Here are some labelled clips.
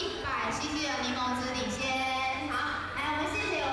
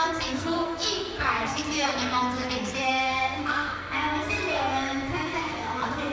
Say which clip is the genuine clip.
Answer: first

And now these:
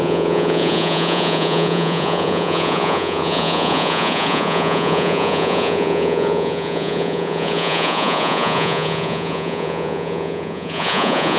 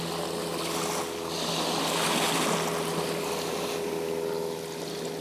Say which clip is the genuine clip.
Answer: second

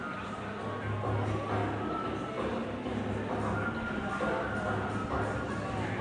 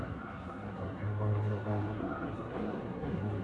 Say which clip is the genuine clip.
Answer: first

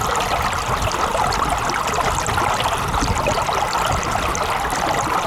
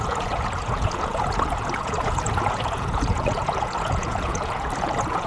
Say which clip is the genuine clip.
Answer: first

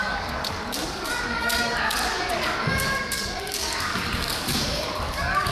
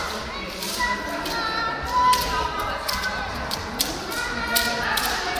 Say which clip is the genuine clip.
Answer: second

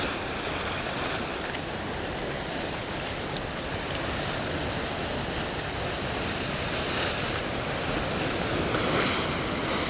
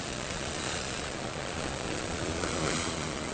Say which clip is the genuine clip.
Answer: first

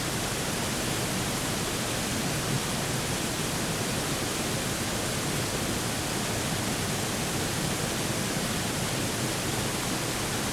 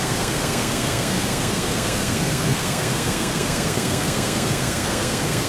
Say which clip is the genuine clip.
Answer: first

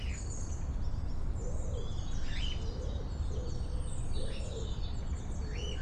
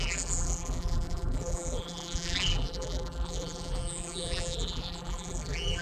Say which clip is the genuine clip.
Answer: first